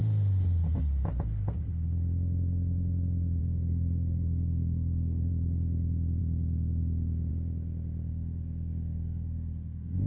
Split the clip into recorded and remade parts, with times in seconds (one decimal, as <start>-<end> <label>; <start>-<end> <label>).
0.0-3.4 recorded; 3.4-5.3 remade; 5.3-8.1 recorded; 8.1-10.1 remade